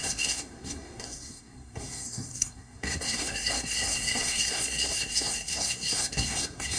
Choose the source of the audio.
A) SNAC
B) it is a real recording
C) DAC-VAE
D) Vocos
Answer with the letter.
A